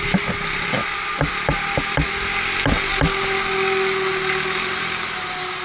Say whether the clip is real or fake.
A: real